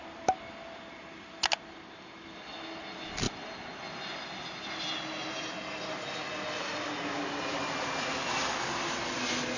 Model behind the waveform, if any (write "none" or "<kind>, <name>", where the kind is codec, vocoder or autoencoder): none